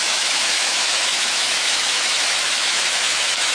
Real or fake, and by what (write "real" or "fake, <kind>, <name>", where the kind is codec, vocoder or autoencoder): fake, autoencoder, DAC-VAE